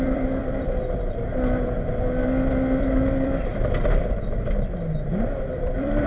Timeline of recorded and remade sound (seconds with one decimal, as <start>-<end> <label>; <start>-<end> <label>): 0.0-0.4 remade; 0.4-2.8 recorded; 2.8-3.5 remade; 3.5-5.4 recorded; 5.4-6.1 remade